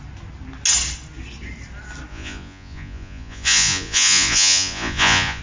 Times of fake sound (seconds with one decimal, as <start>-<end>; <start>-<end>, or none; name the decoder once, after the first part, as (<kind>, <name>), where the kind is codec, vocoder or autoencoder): 2.1-5.4 (vocoder, Vocos)